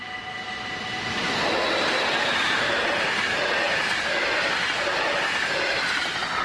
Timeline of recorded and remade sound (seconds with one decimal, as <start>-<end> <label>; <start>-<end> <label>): 0.0-2.2 recorded; 2.2-6.0 remade; 6.0-6.4 recorded